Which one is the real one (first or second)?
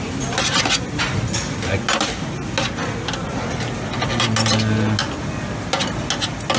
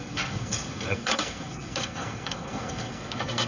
first